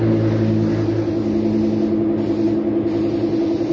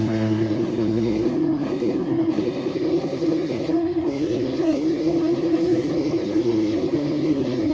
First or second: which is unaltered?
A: first